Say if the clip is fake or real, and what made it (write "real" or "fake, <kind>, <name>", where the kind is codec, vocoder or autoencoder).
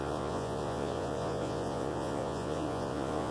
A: fake, vocoder, Vocos